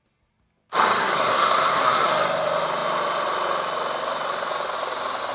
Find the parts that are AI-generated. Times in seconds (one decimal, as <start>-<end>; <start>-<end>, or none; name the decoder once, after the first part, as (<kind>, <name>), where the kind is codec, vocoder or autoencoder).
1.0-2.1 (codec, SNAC)